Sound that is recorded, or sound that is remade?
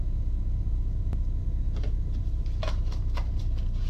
recorded